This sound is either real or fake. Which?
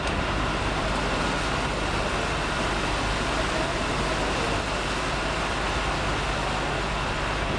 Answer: real